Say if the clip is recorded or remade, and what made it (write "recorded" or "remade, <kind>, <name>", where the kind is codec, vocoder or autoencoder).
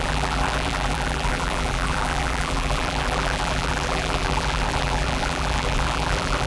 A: remade, vocoder, BigVGAN v2